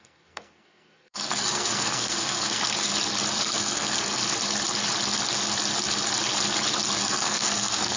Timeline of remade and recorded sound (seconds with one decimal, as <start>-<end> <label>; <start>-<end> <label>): 0.0-2.9 remade; 2.9-3.4 recorded; 3.4-4.2 remade; 4.2-7.0 recorded; 7.0-8.0 remade